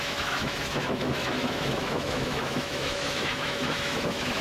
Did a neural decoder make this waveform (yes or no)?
yes